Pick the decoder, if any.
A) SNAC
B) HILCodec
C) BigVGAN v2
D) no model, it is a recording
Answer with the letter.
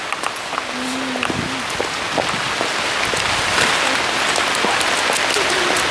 D